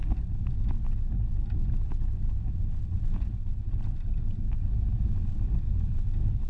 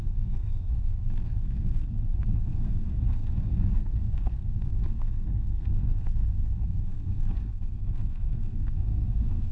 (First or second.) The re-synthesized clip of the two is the second